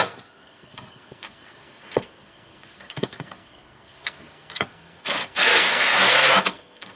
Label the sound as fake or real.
fake